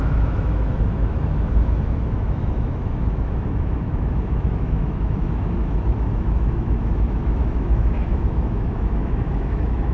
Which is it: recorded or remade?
remade